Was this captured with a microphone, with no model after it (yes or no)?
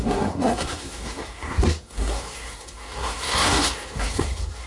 no